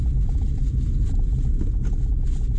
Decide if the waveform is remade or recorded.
recorded